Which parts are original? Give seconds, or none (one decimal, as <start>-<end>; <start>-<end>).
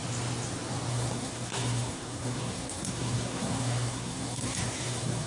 0.0-0.9